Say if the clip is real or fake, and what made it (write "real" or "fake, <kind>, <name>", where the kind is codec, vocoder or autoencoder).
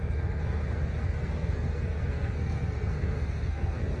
fake, codec, SNAC